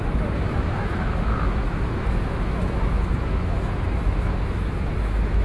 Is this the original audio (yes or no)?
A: no